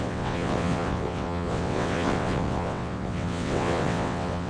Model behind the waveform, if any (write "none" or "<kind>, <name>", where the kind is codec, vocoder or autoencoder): vocoder, WaveNeXt